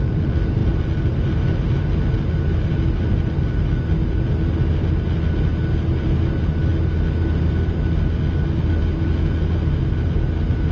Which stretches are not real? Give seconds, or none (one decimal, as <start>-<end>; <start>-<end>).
none